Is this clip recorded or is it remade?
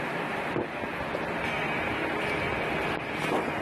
recorded